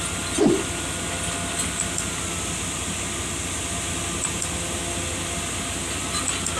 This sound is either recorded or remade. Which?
recorded